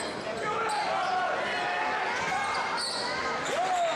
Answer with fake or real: real